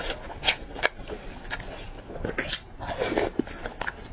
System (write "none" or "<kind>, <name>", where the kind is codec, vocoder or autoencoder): none